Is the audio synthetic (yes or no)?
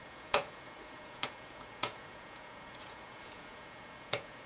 yes